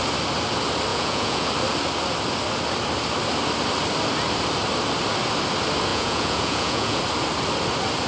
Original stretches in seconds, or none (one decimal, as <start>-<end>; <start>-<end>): 0.0-0.9; 1.5-5.9; 7.0-8.1